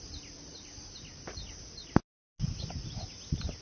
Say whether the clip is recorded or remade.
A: recorded